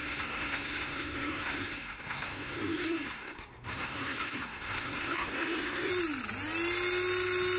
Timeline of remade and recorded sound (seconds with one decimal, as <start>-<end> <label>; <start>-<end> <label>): 0.0-5.9 remade; 5.9-7.6 recorded